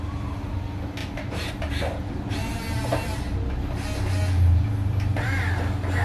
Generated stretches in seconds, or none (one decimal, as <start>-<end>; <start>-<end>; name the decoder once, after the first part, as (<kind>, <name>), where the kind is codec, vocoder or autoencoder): 1.0-1.5 (vocoder, BigVGAN v2)